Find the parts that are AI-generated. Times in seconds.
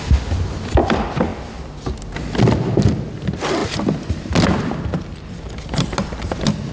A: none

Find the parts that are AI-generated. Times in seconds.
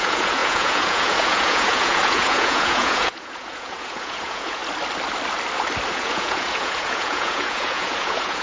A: 0.0-4.6 (vocoder, Vocos); 5.9-8.4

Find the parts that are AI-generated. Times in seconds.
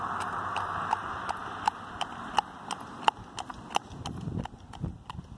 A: none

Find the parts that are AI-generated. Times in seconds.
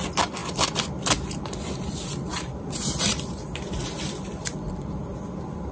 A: 2.3-3.1 (vocoder, BigVGAN v2)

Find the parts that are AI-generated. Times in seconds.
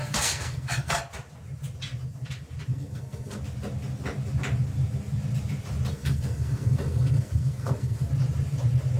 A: 0.0-1.0 (codec, SNAC); 2.7-3.4; 5.9-8.1